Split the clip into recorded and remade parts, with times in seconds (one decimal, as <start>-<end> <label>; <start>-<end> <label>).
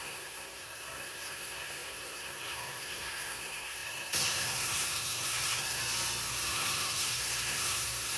0.0-5.8 remade; 5.8-6.3 recorded; 6.3-8.2 remade